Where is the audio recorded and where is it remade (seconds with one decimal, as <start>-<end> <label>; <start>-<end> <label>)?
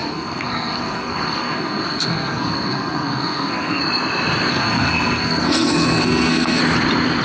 0.0-3.8 remade; 3.8-4.5 recorded; 4.5-6.6 remade; 6.6-7.2 recorded